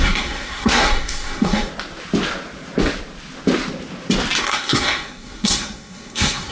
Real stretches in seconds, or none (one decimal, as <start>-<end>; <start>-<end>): 1.7-4.4